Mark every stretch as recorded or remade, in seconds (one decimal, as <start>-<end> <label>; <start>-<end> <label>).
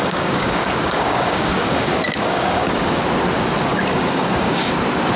0.0-3.0 remade; 3.0-3.7 recorded; 3.7-4.7 remade; 4.7-5.2 recorded